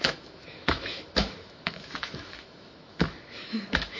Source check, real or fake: fake